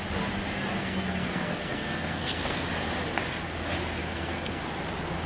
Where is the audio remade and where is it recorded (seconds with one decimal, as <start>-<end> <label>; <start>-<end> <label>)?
0.0-0.8 recorded; 0.8-2.7 remade; 2.7-4.0 recorded; 4.0-4.6 remade; 4.6-5.3 recorded

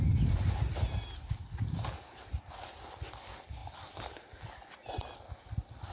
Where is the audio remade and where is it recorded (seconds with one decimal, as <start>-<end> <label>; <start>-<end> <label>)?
0.0-5.9 recorded

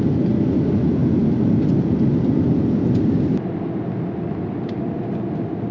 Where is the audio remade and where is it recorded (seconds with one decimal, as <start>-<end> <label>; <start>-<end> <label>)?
0.0-5.7 recorded

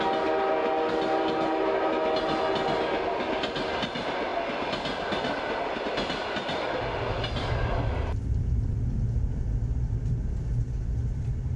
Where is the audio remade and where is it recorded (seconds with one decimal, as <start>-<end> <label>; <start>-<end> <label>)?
0.0-11.6 recorded

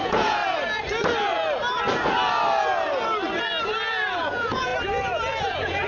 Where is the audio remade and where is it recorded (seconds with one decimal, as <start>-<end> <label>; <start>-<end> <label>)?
0.0-0.4 remade; 0.4-3.9 recorded; 3.9-4.7 remade; 4.7-5.4 recorded; 5.4-5.9 remade

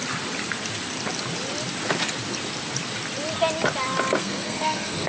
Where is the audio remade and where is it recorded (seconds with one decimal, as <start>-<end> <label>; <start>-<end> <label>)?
0.0-4.2 recorded; 4.2-5.1 remade

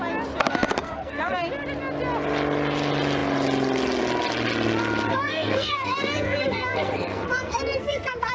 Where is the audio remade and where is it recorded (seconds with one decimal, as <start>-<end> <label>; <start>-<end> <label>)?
0.0-0.4 recorded; 0.4-1.4 remade; 1.4-5.1 recorded; 5.1-8.3 remade

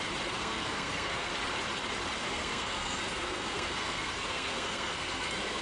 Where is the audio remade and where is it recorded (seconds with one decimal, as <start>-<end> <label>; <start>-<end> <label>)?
0.0-0.4 recorded; 0.4-1.3 remade; 1.3-2.2 recorded; 2.2-5.6 remade